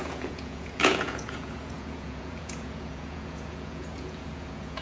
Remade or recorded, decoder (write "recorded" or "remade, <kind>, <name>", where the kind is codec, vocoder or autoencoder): remade, vocoder, Vocos